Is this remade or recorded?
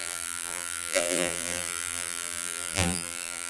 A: remade